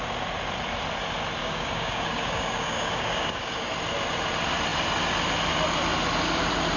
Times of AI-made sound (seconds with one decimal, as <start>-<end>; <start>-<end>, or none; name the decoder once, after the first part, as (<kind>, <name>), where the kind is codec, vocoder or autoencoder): 1.4-3.7 (codec, DAC)